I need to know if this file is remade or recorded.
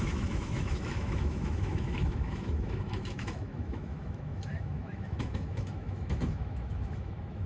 remade